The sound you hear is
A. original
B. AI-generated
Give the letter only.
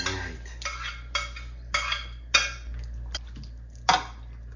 A